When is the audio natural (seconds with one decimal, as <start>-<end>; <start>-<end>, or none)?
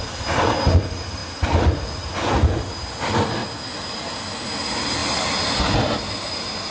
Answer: 0.0-1.2; 2.9-6.7